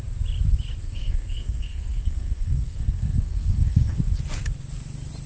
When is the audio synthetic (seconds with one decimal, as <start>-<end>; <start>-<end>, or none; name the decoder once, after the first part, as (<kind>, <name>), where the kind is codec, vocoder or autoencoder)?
0.8-4.0 (codec, SNAC)